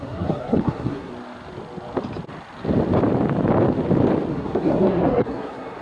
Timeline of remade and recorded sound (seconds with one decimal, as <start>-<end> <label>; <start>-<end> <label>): 0.0-1.1 remade; 1.1-4.3 recorded; 4.3-5.8 remade